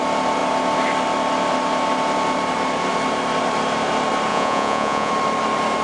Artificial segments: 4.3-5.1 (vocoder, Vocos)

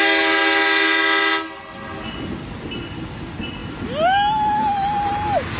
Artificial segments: none

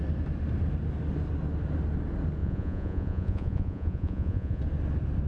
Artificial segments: 2.4-4.6 (vocoder, Vocos)

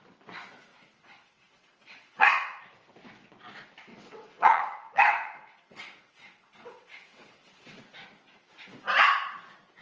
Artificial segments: 0.7-2.6 (vocoder, WaveNeXt); 3.9-7.8

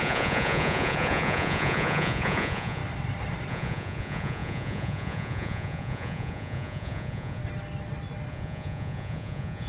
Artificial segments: 0.0-2.8 (vocoder, Vocos); 3.5-7.4; 8.3-9.7

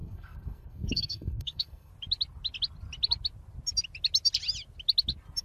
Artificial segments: 0.0-1.9 (codec, SNAC)

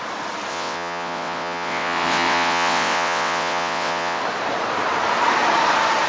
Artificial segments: 0.5-4.2 (vocoder, WaveNeXt)